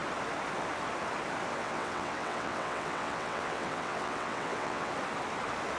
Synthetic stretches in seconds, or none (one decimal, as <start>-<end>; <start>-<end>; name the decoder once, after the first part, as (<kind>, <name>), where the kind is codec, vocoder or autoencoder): 1.6-4.9 (vocoder, WaveNeXt)

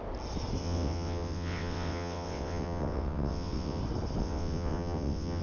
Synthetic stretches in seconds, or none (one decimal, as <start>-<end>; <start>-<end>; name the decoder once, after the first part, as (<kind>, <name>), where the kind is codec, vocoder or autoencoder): 0.6-3.8 (vocoder, WaveNeXt); 4.2-5.4

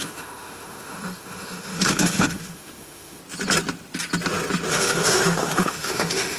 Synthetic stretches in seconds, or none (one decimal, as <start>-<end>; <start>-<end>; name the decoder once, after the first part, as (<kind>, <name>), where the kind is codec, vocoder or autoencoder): 0.0-3.2 (autoencoder, DAC-VAE); 4.7-6.4

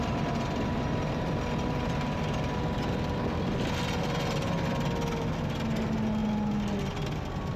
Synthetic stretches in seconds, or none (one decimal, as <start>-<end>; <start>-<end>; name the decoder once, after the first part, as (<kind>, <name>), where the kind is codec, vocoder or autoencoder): none

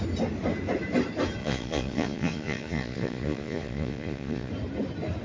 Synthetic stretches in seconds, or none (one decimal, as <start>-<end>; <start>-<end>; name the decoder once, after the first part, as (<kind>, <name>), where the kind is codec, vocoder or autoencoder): 1.4-4.5 (vocoder, Vocos)

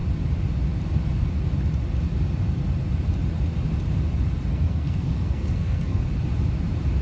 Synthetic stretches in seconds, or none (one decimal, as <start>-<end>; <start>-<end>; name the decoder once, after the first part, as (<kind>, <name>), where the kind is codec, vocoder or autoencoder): 4.5-6.0 (codec, SNAC)

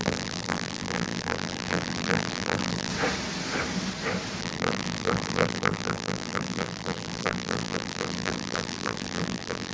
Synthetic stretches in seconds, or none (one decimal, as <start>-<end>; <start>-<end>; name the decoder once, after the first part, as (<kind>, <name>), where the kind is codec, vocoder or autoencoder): 0.0-2.9 (vocoder, BigVGAN v2); 4.4-9.7